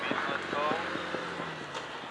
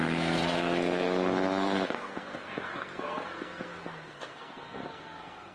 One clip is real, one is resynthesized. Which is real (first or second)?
first